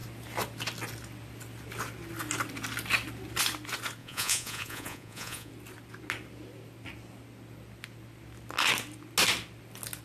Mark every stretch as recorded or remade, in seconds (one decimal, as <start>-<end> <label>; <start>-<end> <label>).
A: 0.0-4.0 recorded; 4.0-5.5 remade; 5.5-10.0 recorded